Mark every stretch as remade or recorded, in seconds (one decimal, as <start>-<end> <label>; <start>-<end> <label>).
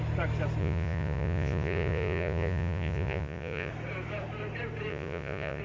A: 0.0-0.6 recorded; 0.6-3.7 remade; 3.7-4.9 recorded; 4.9-5.6 remade